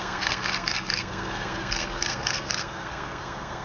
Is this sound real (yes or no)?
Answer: no